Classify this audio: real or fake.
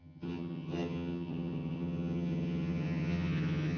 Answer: fake